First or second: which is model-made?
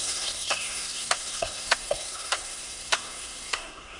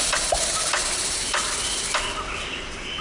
first